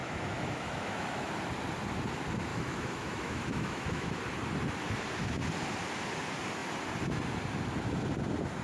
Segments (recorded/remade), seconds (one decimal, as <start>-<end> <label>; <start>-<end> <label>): 0.0-1.3 remade; 1.3-2.5 recorded; 2.5-4.2 remade; 4.2-8.6 recorded